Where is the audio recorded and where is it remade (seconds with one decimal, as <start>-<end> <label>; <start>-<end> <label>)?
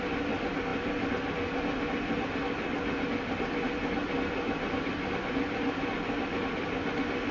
0.0-7.3 recorded